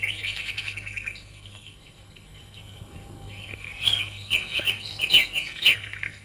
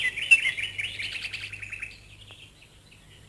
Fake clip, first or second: first